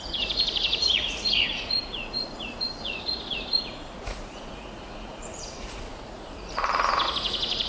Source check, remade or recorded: remade